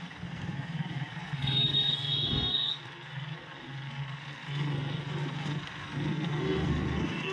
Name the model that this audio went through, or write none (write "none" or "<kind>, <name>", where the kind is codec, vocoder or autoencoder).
codec, SNAC